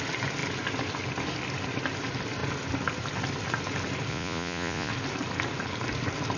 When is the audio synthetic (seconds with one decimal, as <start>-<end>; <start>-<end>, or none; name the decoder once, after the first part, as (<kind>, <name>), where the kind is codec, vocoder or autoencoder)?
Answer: 4.1-4.9 (vocoder, Vocos)